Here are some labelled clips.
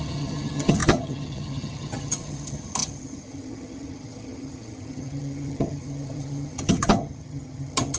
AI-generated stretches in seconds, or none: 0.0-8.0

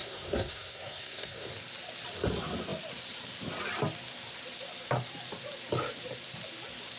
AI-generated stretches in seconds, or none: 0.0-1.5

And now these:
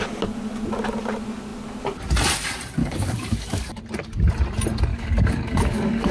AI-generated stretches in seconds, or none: 2.8-3.8; 4.9-6.1